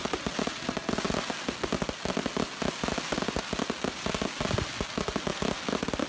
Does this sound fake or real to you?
real